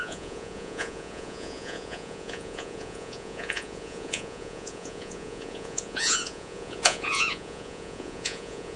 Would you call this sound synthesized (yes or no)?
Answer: yes